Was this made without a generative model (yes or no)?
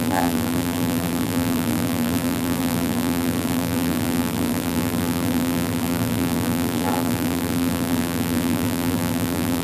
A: no